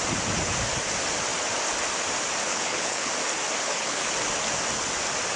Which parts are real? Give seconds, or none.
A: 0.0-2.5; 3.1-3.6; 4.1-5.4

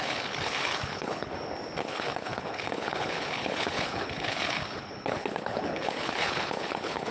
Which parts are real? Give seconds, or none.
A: 1.3-1.8

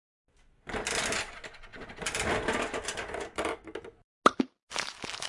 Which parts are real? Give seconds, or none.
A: 0.0-5.3

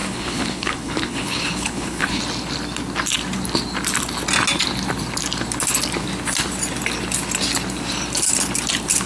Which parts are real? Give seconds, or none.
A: 2.2-9.1

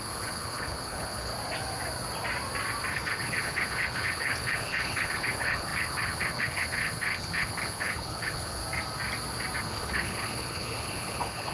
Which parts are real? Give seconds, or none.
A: 1.3-2.9; 8.6-9.6